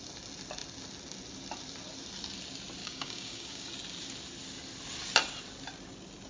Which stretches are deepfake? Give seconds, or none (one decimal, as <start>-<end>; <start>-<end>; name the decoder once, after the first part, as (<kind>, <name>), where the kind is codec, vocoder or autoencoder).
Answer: 2.8-3.7 (codec, DAC)

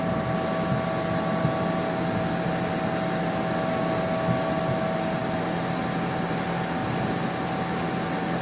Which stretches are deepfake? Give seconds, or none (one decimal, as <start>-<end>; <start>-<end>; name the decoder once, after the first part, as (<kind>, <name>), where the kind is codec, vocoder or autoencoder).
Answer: none

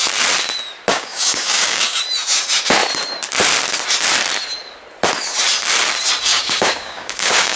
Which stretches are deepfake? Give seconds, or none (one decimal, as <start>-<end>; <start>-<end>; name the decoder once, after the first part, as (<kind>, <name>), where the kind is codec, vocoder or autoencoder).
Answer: 0.9-2.0 (codec, DAC); 6.3-7.6

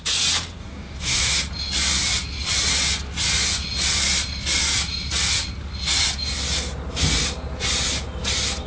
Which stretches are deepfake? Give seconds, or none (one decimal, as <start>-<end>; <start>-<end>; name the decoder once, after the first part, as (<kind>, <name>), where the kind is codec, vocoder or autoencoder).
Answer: 0.6-1.4 (codec, DAC)

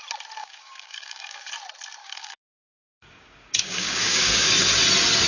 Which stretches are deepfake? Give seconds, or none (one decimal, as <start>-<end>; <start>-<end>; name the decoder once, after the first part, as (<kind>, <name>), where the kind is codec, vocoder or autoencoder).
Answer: 0.4-1.5 (codec, DAC); 2.0-4.5

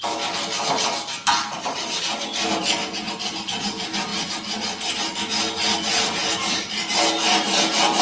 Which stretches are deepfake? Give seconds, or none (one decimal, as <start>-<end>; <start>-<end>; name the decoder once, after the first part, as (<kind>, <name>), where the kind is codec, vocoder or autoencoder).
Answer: none